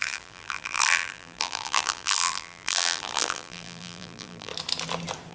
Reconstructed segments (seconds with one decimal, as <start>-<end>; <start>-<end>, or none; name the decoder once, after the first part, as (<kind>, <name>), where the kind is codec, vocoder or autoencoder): 0.0-4.5 (vocoder, BigVGAN v2)